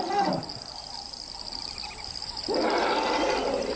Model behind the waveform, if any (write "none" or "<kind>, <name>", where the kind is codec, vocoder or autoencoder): none